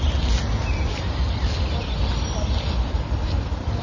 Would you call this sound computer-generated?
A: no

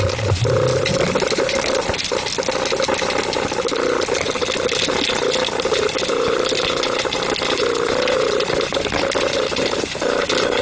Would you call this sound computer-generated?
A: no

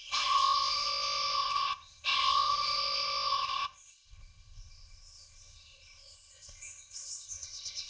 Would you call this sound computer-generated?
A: yes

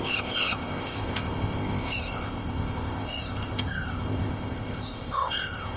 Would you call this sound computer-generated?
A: yes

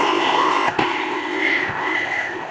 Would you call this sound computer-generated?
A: yes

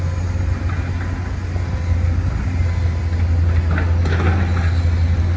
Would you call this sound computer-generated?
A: no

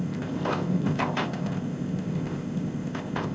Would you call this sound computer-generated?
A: yes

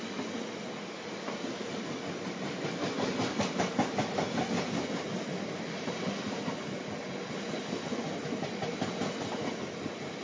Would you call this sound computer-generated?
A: no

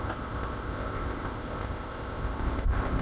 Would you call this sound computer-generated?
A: yes